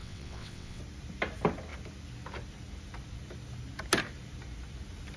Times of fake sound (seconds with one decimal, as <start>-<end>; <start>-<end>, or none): 0.0-0.8